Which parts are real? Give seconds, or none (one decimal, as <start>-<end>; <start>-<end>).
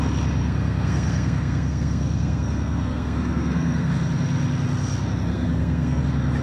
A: 0.0-0.4; 3.9-5.3; 6.0-6.4